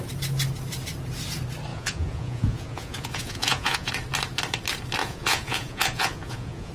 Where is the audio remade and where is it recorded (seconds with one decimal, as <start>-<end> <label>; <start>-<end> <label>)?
0.0-1.7 recorded; 1.7-3.9 remade; 3.9-5.0 recorded; 5.0-6.7 remade